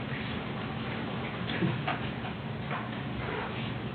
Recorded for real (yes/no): yes